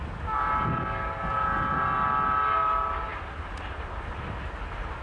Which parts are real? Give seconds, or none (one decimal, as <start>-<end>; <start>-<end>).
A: 0.0-5.0